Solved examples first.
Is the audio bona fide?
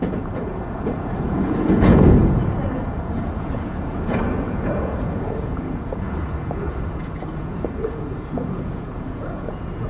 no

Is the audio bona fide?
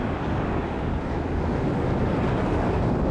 no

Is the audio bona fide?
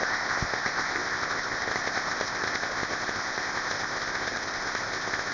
no